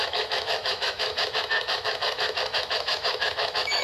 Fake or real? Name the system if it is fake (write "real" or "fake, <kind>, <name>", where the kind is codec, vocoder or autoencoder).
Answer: fake, autoencoder, DAC-VAE